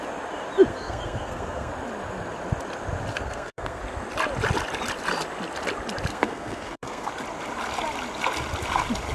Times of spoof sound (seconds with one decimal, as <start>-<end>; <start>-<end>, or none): 0.7-1.7; 3.1-3.8; 6.1-7.1